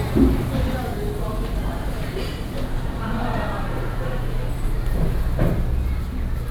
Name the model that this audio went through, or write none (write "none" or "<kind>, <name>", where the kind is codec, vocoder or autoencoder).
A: none